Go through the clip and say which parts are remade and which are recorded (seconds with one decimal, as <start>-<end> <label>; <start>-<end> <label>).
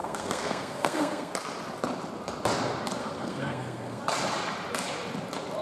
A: 0.0-1.3 remade; 1.3-3.0 recorded; 3.0-4.0 remade; 4.0-5.6 recorded